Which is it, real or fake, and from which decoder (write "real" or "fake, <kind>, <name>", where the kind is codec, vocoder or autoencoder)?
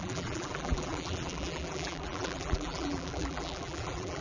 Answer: fake, vocoder, BigVGAN v2